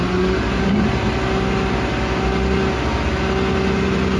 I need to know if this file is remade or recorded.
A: recorded